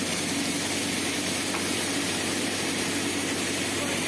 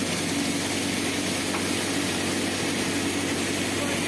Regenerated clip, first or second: first